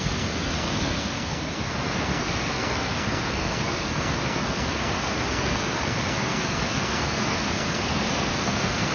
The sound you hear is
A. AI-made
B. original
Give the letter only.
A